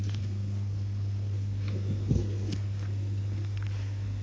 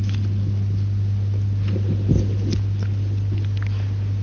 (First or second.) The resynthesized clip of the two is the first